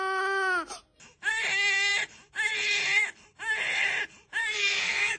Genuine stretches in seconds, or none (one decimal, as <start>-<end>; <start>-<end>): 0.0-4.4